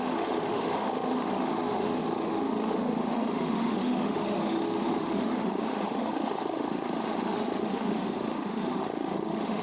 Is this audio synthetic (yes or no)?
yes